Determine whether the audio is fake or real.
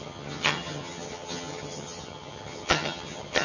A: fake